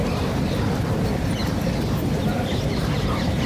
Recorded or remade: recorded